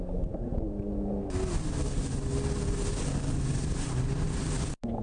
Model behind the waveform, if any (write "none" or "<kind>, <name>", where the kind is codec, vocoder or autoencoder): none